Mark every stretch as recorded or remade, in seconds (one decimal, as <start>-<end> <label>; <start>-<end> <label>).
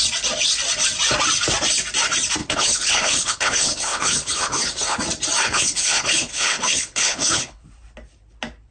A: 0.0-2.4 recorded; 2.4-5.0 remade; 5.0-5.4 recorded; 5.4-7.6 remade; 7.6-8.7 recorded